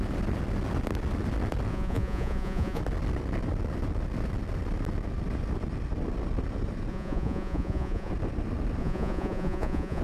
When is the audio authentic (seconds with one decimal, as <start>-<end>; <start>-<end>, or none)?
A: 0.0-1.7; 2.8-6.9; 8.1-8.8